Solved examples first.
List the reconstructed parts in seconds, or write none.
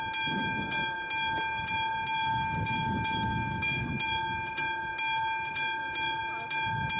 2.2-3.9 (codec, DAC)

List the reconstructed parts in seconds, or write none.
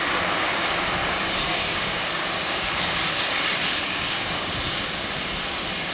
1.0-4.5 (codec, DAC)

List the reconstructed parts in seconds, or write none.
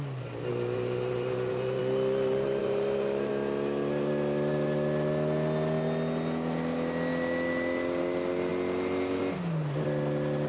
0.5-1.8 (vocoder, BigVGAN v2); 2.6-3.3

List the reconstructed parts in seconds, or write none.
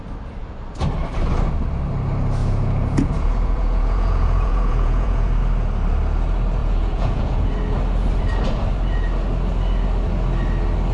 2.4-5.3 (vocoder, Vocos); 6.6-7.5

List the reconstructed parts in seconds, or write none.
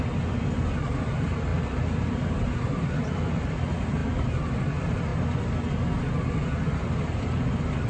0.0-5.1 (vocoder, BigVGAN v2); 7.2-7.9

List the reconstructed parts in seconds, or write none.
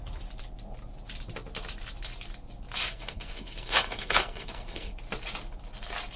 2.9-4.9 (codec, SNAC)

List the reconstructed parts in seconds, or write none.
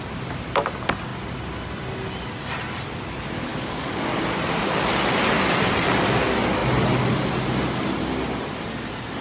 3.5-4.2 (codec, DAC)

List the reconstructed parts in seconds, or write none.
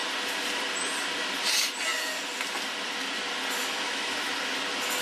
3.6-4.3 (autoencoder, DAC-VAE)